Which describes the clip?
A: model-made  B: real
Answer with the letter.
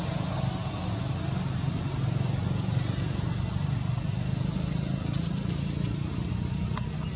B